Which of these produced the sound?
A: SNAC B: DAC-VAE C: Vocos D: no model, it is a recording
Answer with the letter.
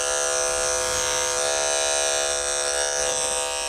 D